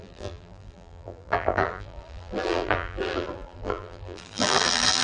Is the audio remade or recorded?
remade